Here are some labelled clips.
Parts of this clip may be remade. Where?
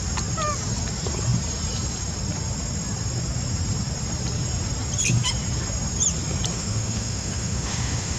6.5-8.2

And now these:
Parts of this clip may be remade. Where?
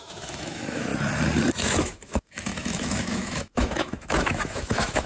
0.0-0.9; 1.6-5.1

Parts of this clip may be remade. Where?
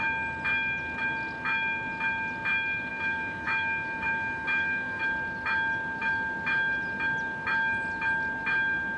2.9-5.0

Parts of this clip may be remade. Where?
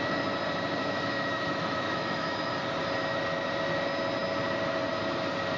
0.8-2.5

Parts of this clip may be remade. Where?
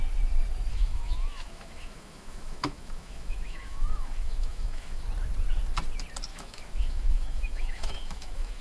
0.7-5.0; 6.3-8.6